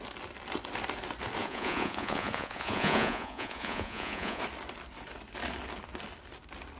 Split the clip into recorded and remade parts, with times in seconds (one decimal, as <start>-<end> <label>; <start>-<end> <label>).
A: 0.0-1.4 recorded; 1.4-4.4 remade; 4.4-6.8 recorded